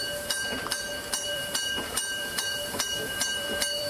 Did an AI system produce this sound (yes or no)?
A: yes